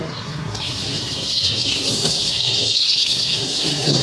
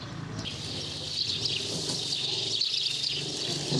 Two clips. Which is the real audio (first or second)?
second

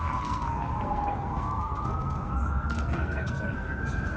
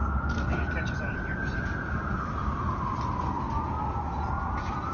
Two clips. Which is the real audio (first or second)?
second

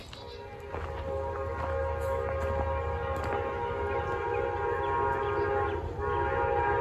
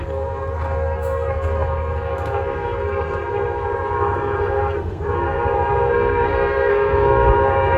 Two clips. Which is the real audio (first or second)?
first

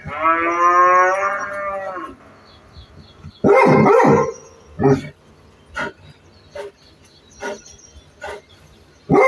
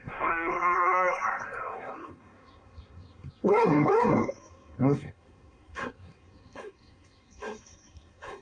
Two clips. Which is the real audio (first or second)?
first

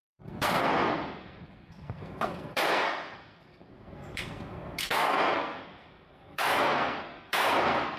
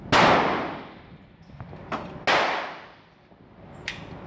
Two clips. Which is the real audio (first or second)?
second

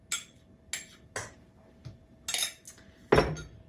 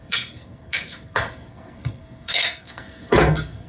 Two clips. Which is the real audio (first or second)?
first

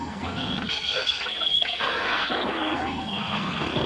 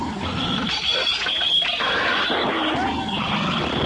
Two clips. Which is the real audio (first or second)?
second